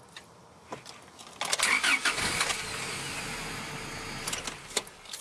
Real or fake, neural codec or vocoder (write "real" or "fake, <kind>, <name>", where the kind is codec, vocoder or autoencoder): real